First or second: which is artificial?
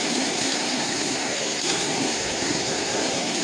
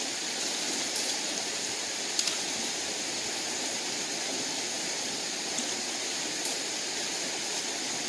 first